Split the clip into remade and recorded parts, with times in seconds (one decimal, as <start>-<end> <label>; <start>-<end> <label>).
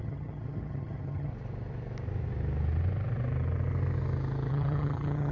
0.0-1.3 remade; 1.3-4.5 recorded; 4.5-5.3 remade